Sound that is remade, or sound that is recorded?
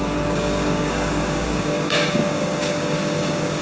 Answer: remade